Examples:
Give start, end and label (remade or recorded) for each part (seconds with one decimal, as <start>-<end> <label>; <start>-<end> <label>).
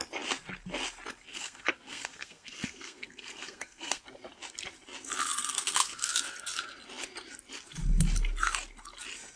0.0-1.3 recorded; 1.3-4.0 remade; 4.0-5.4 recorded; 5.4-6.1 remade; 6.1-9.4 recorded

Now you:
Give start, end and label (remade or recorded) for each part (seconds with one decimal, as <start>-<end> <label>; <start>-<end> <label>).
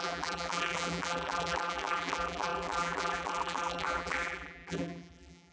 0.0-5.5 remade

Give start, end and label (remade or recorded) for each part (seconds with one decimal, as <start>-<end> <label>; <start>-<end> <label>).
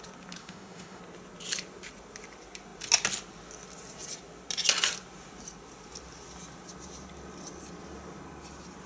0.0-0.4 recorded; 0.4-1.0 remade; 1.0-8.9 recorded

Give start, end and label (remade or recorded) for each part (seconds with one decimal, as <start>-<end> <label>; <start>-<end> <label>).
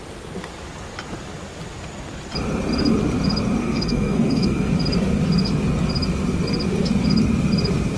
0.0-3.6 recorded; 3.6-4.7 remade; 4.7-8.0 recorded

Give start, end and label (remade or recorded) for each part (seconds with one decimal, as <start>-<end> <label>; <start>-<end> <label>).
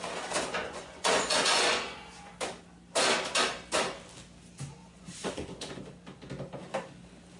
0.0-0.5 recorded; 0.5-2.3 remade; 2.3-4.8 recorded; 4.8-5.8 remade; 5.8-7.4 recorded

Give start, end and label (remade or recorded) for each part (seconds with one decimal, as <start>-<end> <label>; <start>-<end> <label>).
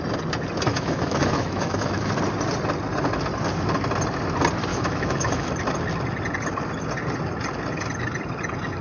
0.0-0.7 recorded; 0.7-2.1 remade; 2.1-4.7 recorded; 4.7-5.5 remade; 5.5-8.8 recorded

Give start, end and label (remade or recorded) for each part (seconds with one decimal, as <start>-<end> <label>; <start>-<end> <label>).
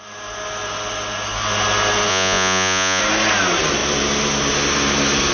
0.0-2.1 recorded; 2.1-3.0 remade; 3.0-5.3 recorded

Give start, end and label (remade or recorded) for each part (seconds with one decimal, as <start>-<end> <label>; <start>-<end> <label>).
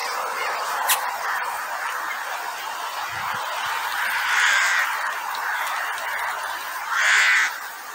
0.0-7.9 recorded